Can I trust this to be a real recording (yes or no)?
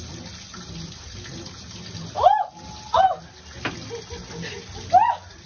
yes